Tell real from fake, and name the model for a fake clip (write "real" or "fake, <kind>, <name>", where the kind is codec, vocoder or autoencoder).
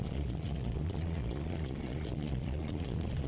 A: fake, vocoder, Vocos